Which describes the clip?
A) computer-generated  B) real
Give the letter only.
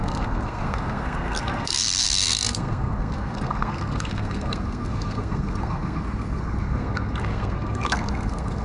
A